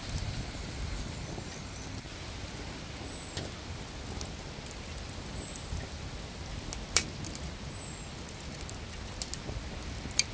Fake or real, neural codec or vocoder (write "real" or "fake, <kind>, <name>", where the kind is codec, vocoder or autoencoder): real